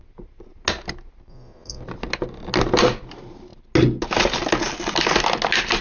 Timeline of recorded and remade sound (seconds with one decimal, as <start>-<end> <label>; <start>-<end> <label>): 0.0-5.8 recorded